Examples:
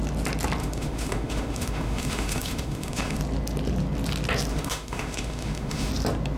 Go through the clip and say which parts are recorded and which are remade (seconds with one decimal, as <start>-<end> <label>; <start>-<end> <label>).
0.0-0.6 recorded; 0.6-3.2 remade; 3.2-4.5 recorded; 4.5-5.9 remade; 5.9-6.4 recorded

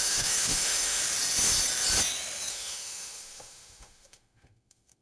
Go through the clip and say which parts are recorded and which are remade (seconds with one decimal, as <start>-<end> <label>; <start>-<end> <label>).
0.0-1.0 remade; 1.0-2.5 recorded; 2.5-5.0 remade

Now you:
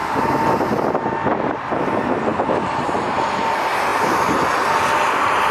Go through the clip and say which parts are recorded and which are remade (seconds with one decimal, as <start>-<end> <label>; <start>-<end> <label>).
0.0-5.5 recorded

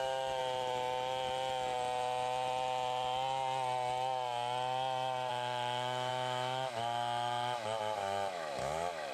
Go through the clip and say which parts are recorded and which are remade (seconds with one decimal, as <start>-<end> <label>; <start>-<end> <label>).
0.0-0.4 remade; 0.4-5.3 recorded; 5.3-9.1 remade

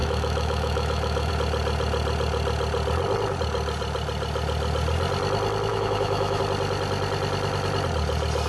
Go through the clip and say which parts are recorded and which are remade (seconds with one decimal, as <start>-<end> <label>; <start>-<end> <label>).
0.0-1.3 remade; 1.3-5.7 recorded; 5.7-6.4 remade; 6.4-8.5 recorded